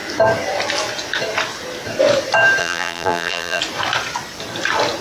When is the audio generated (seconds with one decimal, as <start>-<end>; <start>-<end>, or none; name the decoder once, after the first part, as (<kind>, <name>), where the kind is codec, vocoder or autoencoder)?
2.6-3.6 (vocoder, BigVGAN v2)